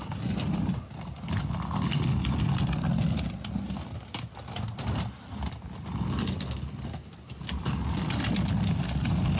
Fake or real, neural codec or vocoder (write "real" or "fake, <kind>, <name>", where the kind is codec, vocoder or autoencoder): real